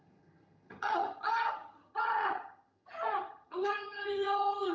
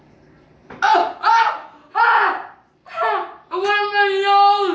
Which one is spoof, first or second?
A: first